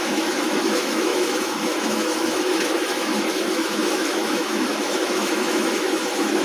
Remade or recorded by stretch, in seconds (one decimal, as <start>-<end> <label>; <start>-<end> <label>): 0.0-6.4 remade